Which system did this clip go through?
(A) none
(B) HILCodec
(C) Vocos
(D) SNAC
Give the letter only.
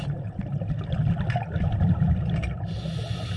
A